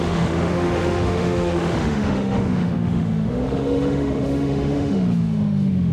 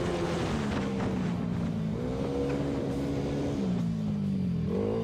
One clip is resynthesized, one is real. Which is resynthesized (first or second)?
first